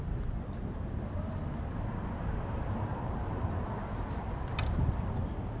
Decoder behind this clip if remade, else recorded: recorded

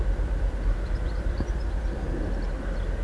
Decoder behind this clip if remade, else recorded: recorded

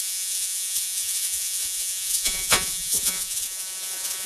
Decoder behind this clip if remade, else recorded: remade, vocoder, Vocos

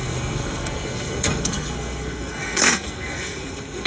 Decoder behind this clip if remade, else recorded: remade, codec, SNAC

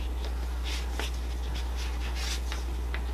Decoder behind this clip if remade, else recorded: recorded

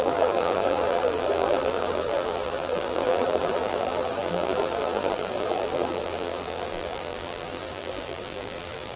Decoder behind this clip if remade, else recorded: remade, vocoder, BigVGAN v2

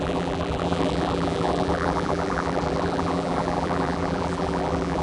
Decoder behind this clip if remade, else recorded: remade, vocoder, BigVGAN v2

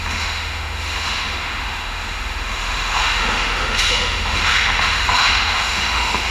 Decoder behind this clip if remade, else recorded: remade, autoencoder, DAC-VAE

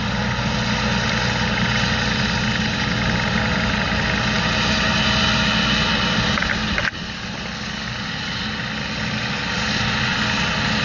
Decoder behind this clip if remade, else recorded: recorded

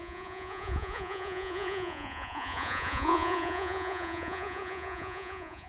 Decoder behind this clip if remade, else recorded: remade, vocoder, Vocos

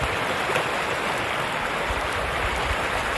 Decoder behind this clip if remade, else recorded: recorded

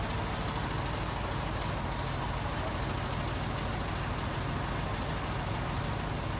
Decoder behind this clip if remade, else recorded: recorded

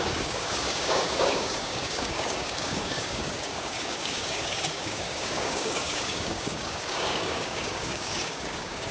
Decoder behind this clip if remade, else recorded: remade, codec, DAC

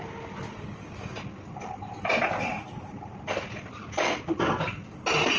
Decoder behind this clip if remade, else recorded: recorded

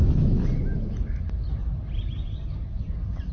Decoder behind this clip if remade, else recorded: recorded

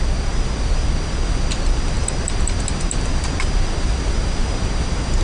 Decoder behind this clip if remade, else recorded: recorded